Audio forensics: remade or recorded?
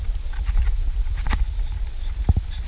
recorded